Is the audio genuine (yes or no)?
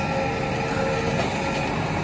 yes